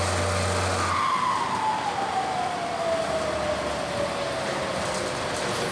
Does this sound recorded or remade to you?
recorded